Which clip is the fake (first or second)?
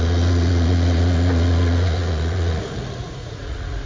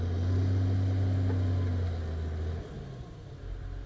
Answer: first